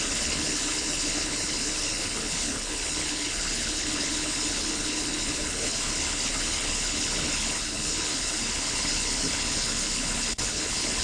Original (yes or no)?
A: no